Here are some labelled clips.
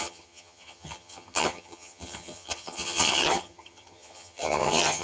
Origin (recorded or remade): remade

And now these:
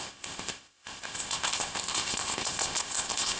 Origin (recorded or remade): remade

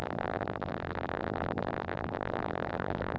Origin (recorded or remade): remade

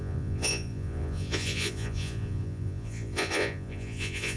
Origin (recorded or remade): remade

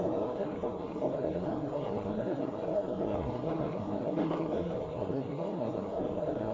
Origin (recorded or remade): remade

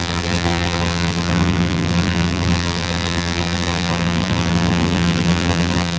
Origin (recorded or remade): remade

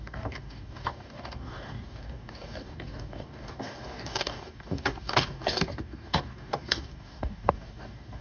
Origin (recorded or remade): remade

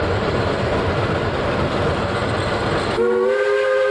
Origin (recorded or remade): recorded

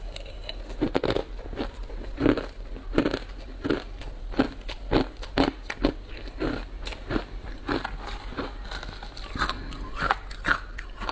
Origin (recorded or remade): recorded